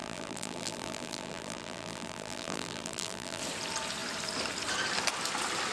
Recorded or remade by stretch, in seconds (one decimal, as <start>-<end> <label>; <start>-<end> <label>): 0.0-3.4 remade; 3.4-5.7 recorded